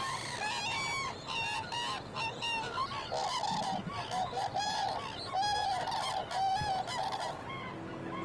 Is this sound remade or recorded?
recorded